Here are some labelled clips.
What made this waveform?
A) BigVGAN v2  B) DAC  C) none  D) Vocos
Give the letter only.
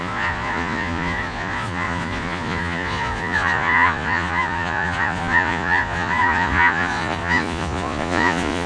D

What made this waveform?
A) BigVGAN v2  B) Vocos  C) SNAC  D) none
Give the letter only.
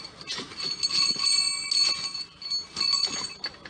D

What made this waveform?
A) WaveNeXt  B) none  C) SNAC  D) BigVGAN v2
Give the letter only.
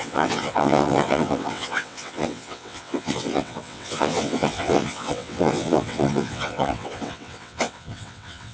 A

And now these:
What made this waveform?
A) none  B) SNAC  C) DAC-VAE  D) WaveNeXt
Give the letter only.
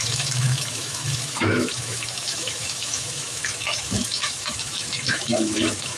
C